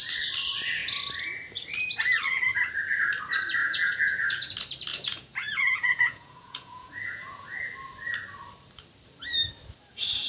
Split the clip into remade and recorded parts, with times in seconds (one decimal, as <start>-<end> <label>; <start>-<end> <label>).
0.0-3.6 recorded; 3.6-4.5 remade; 4.5-4.9 recorded; 4.9-7.6 remade; 7.6-10.3 recorded